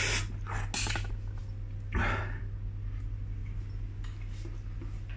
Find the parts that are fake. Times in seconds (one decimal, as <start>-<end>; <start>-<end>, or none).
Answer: none